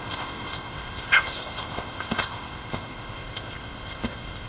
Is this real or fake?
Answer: fake